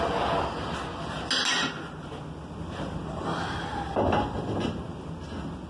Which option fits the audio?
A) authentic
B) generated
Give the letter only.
A